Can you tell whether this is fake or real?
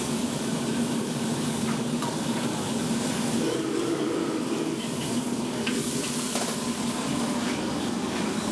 fake